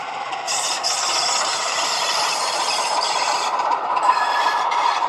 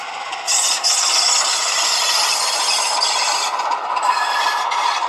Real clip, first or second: second